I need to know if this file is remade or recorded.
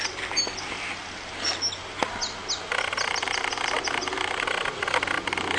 recorded